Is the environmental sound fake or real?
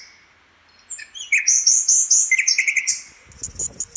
real